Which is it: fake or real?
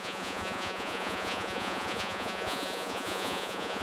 fake